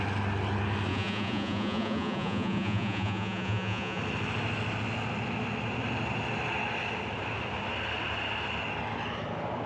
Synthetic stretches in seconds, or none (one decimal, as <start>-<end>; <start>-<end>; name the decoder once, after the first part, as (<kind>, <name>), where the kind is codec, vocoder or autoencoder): 0.9-4.0 (vocoder, Vocos)